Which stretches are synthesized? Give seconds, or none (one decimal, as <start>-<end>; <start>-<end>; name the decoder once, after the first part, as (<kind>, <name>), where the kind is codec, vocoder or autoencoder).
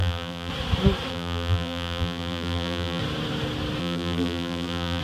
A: 0.0-0.5 (vocoder, BigVGAN v2); 1.1-3.0; 3.8-5.0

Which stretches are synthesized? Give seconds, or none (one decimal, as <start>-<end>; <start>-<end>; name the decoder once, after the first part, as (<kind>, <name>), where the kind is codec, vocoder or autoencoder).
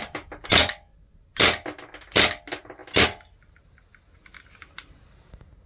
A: none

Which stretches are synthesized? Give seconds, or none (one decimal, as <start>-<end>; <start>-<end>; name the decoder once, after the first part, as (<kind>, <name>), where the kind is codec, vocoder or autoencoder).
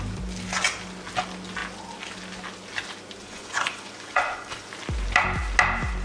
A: 3.2-4.7 (vocoder, Vocos)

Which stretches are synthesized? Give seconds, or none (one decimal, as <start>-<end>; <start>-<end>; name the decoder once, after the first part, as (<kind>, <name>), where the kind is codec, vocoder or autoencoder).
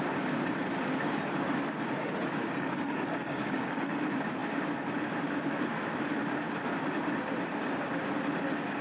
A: 2.4-4.0 (codec, DAC)